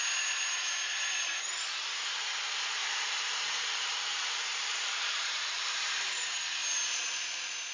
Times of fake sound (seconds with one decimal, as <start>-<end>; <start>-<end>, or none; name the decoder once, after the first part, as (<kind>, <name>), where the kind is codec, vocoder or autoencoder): 2.8-6.3 (vocoder, BigVGAN v2)